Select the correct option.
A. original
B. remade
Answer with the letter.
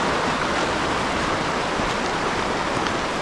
A